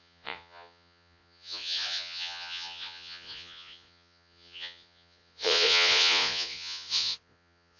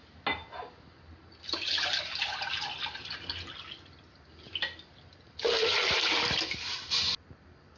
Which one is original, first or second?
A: second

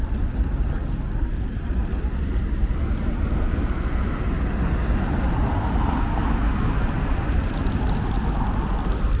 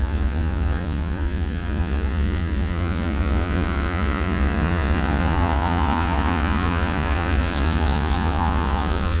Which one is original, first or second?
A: first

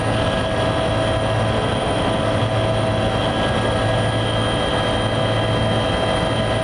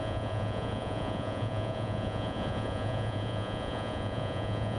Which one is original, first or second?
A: first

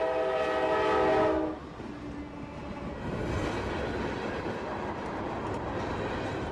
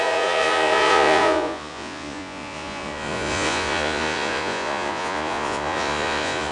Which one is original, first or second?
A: first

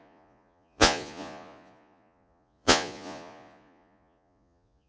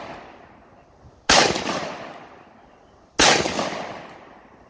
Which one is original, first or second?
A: second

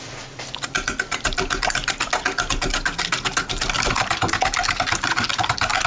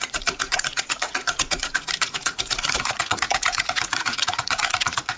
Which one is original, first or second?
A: first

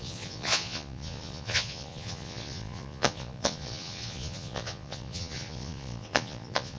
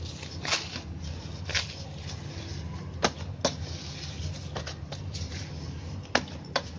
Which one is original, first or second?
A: second